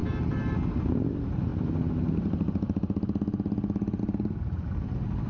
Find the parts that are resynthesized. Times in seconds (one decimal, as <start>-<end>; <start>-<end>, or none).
none